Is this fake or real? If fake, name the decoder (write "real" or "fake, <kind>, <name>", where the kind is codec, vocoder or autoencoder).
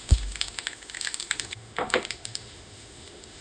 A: fake, autoencoder, DAC-VAE